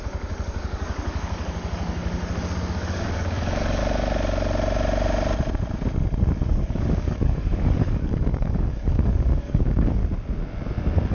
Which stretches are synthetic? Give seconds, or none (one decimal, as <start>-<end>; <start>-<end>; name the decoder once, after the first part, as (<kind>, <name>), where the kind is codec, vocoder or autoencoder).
0.0-3.8 (codec, DAC); 6.5-10.0